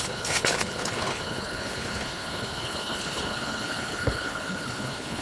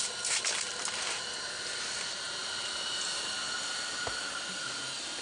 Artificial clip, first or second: first